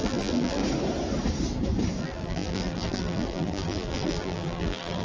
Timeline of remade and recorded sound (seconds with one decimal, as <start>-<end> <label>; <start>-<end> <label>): 0.0-0.6 remade; 0.6-2.0 recorded; 2.0-5.0 remade